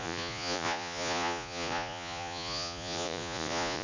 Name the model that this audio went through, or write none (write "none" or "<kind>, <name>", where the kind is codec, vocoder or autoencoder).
vocoder, Vocos